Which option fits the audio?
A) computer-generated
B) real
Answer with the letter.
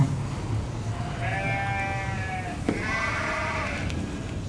B